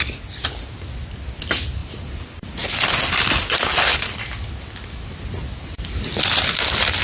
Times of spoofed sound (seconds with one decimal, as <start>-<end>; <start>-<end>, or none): none